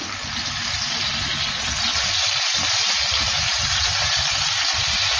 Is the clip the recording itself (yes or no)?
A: yes